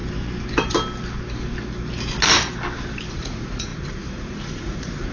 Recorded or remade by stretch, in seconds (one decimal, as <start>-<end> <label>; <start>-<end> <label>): 0.0-3.1 recorded; 3.1-5.1 remade